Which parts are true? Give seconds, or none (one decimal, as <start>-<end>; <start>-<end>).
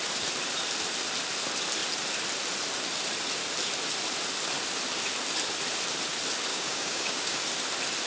0.0-6.5; 7.4-8.1